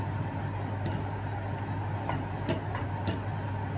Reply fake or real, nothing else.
real